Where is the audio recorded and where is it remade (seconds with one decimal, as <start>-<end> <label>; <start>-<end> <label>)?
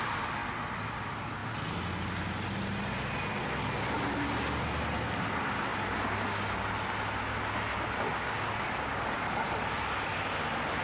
0.0-10.8 recorded